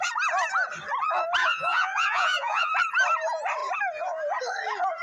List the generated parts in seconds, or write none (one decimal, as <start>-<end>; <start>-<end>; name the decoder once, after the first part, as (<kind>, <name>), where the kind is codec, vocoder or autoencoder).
1.4-2.7 (vocoder, Vocos)

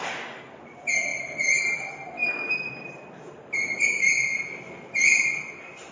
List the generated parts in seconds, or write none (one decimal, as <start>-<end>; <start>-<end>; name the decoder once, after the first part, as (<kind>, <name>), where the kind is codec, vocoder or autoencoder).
none